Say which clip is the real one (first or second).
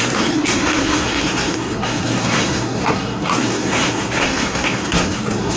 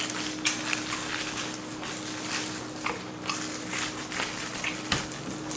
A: second